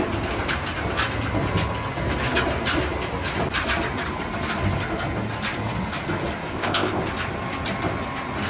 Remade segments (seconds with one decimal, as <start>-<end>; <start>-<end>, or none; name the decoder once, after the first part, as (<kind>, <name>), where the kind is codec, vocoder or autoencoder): 6.5-7.0 (codec, ZipCodec)